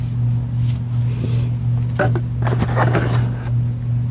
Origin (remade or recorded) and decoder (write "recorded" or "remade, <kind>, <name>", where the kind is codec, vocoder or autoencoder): recorded